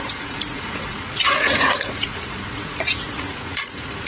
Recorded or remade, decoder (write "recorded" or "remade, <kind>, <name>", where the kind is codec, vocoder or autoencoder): remade, vocoder, Vocos